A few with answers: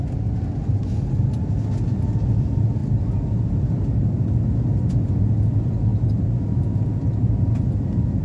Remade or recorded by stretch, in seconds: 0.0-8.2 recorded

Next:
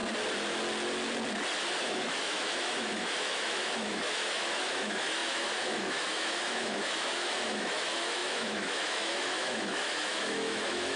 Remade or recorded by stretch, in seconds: 0.0-1.8 recorded; 1.8-11.0 remade

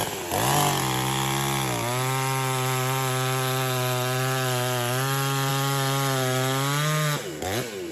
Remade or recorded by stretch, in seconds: 0.0-7.9 recorded

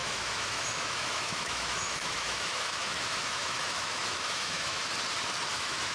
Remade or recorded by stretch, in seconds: 0.0-4.8 remade; 4.8-5.5 recorded; 5.5-5.9 remade

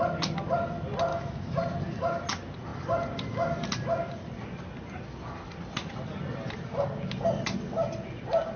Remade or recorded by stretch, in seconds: 0.0-1.1 recorded; 1.1-1.6 remade; 1.6-8.6 recorded